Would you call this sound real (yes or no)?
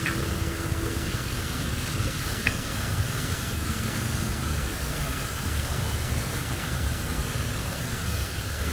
no